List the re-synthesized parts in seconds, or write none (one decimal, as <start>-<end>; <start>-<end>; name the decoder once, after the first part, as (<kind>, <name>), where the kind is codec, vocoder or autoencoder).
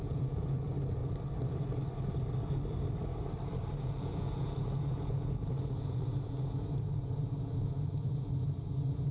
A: 0.0-1.0 (vocoder, Vocos); 3.8-9.1